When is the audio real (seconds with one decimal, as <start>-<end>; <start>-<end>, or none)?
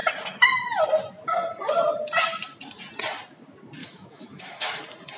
0.0-3.8; 4.8-5.2